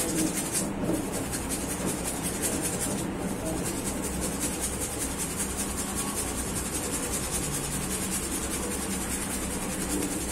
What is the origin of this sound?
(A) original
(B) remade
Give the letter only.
A